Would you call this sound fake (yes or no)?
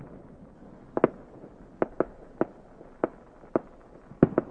no